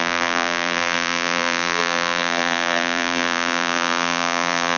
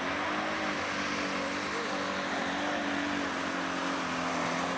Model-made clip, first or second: first